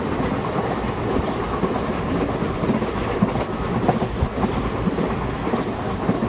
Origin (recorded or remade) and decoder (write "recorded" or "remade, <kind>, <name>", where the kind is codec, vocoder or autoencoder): recorded